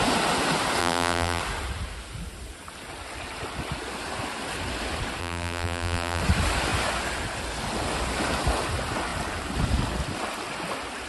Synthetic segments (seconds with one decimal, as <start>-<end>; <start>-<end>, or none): 0.8-1.4; 5.2-6.2